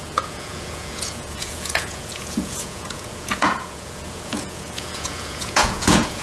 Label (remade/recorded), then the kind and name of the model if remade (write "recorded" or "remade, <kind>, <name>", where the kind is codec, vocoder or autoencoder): remade, vocoder, Vocos